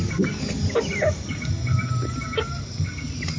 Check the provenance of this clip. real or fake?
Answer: real